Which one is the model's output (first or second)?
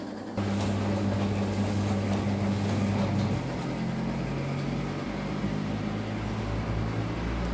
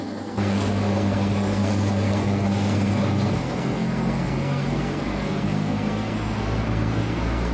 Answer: second